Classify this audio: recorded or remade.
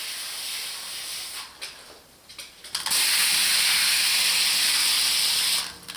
recorded